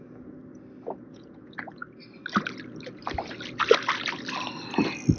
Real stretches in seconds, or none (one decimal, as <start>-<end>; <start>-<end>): 0.4-1.0; 1.8-5.2